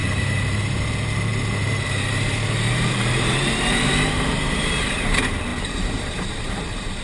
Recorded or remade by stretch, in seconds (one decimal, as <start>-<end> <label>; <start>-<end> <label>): 0.0-0.8 remade; 0.8-1.3 recorded; 1.3-4.7 remade; 4.7-5.5 recorded; 5.5-7.0 remade